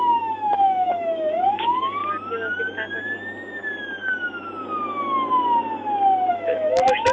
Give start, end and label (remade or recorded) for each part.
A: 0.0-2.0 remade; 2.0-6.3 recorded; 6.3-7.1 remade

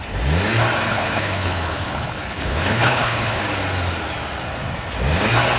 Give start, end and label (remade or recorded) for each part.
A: 0.0-0.9 recorded; 0.9-3.4 remade; 3.4-5.6 recorded

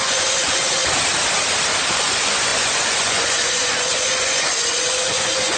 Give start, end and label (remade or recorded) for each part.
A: 0.0-0.8 remade; 0.8-1.9 recorded; 1.9-5.6 remade

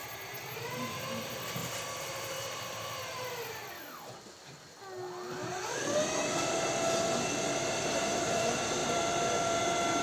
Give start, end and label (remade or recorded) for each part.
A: 0.0-3.6 remade; 3.6-7.8 recorded; 7.8-10.0 remade